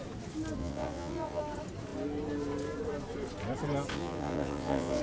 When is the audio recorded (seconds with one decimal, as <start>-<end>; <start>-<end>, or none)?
0.0-0.6; 1.4-3.9